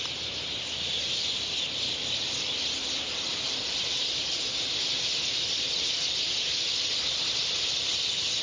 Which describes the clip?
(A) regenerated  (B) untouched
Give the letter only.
B